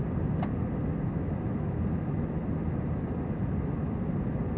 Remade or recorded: recorded